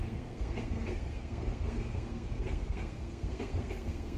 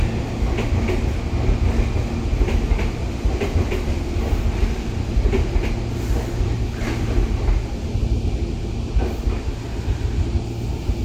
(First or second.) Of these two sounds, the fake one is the first